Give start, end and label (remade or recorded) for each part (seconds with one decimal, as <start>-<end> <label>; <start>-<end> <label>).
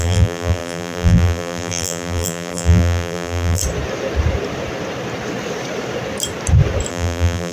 0.0-3.6 remade; 3.6-6.9 recorded; 6.9-7.5 remade